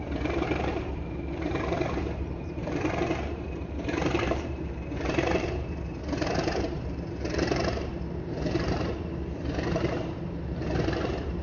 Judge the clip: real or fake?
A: fake